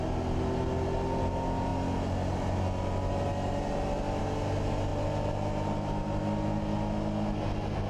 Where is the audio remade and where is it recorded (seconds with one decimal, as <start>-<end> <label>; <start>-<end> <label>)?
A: 0.0-4.9 recorded; 4.9-6.2 remade; 6.2-7.9 recorded

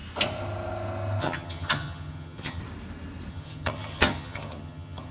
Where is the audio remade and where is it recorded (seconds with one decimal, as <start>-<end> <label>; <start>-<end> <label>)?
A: 0.0-1.2 recorded; 1.2-2.6 remade; 2.6-3.3 recorded; 3.3-5.1 remade

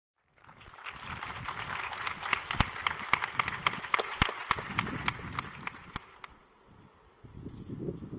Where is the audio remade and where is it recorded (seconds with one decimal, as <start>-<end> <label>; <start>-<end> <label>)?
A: 0.0-7.0 recorded; 7.0-7.7 remade; 7.7-8.2 recorded

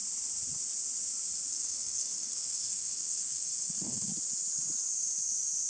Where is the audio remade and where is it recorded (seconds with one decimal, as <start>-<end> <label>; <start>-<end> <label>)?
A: 0.0-1.5 recorded; 1.5-4.1 remade; 4.1-5.7 recorded

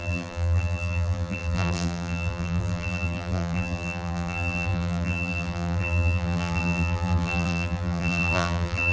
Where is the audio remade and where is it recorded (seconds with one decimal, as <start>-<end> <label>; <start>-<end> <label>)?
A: 0.0-8.9 remade

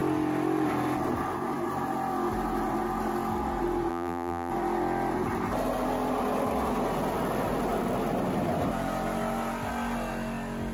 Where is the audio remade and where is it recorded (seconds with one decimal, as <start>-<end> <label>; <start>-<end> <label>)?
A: 0.0-3.9 recorded; 3.9-4.5 remade; 4.5-10.7 recorded

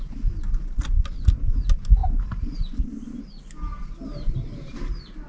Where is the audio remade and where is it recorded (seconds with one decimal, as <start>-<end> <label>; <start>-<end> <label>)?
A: 0.0-5.3 recorded

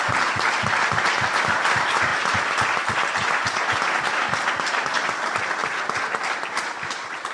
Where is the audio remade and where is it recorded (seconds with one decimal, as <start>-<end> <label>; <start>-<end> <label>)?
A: 0.0-7.3 recorded